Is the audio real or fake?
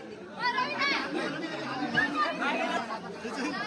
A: fake